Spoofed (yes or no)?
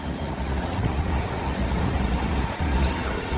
yes